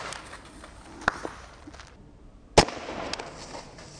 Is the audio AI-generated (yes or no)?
no